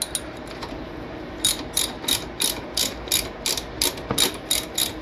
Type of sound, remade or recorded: recorded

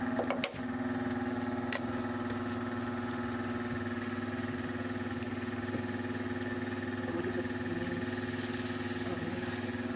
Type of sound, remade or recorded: recorded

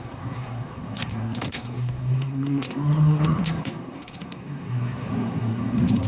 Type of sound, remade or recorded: remade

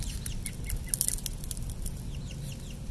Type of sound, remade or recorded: recorded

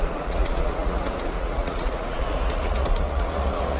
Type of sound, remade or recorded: remade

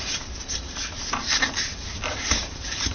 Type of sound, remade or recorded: remade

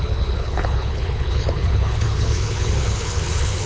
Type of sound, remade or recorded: remade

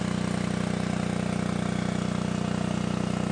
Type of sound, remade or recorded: recorded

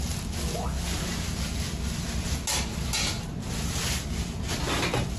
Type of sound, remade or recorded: recorded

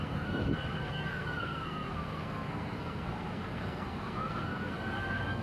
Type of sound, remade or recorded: remade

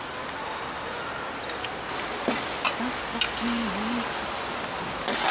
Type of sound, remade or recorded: recorded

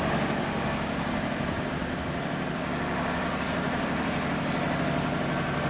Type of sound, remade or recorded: recorded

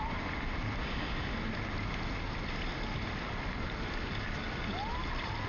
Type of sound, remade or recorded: recorded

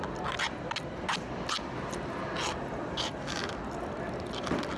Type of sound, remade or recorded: recorded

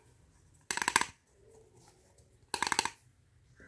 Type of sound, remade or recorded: recorded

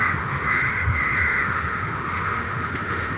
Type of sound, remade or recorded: remade